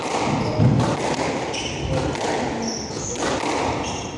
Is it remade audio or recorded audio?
recorded